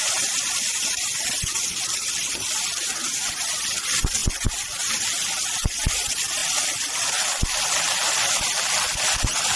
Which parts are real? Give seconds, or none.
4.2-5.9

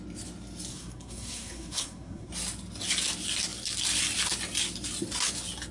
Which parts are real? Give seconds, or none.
0.0-0.7; 2.3-5.7

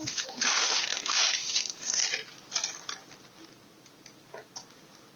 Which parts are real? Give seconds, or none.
2.0-5.2